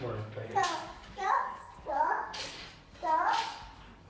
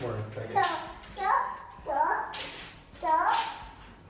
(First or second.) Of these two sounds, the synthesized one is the first